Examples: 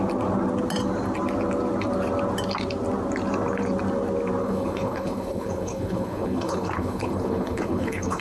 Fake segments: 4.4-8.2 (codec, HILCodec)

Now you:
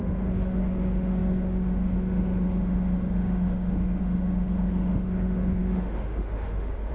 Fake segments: 0.0-6.9 (autoencoder, DAC-VAE)